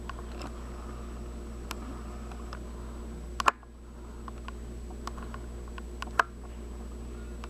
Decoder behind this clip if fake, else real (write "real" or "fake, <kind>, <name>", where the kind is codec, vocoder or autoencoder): real